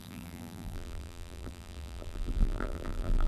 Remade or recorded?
remade